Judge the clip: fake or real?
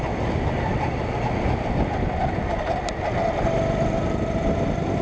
real